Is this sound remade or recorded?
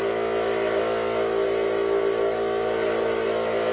recorded